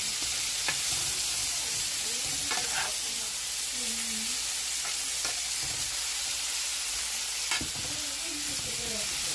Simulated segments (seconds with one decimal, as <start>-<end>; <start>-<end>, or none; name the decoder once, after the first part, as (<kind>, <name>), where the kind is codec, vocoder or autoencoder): 1.4-2.2 (vocoder, BigVGAN v2)